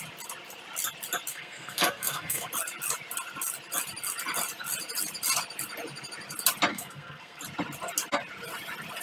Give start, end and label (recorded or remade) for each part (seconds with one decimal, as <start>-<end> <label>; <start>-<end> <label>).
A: 0.0-1.3 recorded; 1.3-2.5 remade; 2.5-6.7 recorded; 6.7-7.4 remade; 7.4-9.0 recorded